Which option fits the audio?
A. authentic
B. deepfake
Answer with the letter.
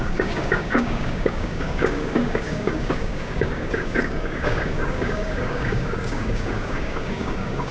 B